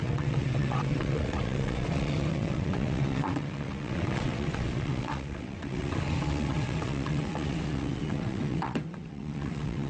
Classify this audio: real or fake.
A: fake